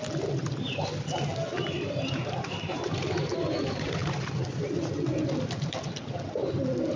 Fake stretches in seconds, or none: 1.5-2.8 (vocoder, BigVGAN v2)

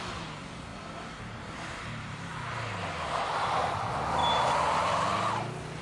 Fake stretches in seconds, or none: none

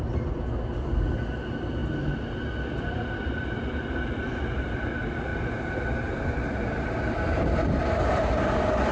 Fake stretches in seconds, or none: 0.0-1.8 (vocoder, BigVGAN v2); 2.8-8.9

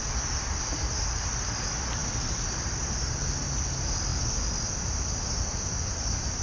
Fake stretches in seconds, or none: none

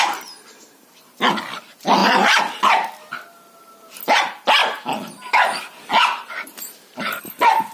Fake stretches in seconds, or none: 2.0-2.6 (vocoder, BigVGAN v2)

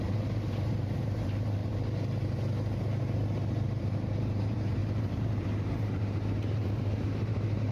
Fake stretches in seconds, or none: 0.0-1.6 (vocoder, BigVGAN v2); 3.8-7.7

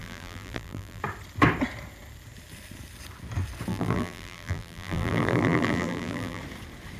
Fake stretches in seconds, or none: 0.0-1.0 (vocoder, BigVGAN v2); 3.7-6.4